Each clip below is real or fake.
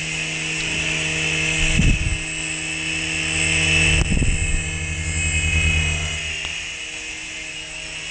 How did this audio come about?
real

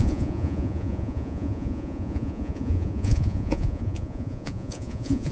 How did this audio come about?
fake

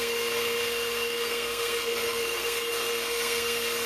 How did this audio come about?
fake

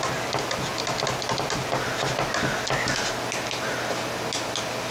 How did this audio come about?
real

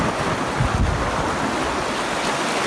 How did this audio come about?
real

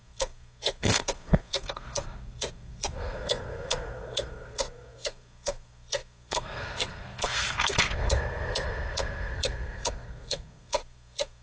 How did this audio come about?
fake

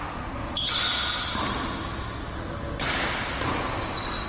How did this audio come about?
real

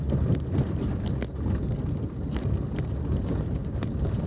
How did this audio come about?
real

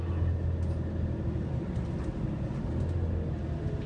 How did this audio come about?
real